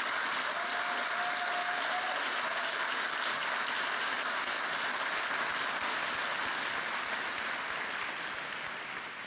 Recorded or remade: recorded